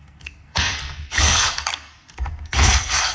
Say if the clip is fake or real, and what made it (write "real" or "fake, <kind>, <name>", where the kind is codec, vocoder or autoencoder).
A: fake, codec, SNAC